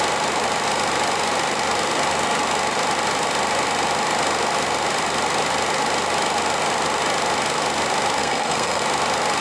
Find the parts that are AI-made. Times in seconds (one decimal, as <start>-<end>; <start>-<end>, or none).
8.2-8.8

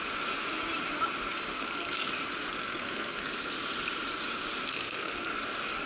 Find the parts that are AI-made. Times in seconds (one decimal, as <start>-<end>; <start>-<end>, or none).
1.5-2.1; 2.5-3.5; 4.7-5.3

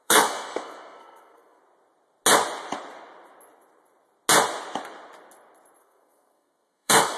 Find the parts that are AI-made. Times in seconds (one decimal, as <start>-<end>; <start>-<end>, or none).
0.0-1.6; 5.8-7.2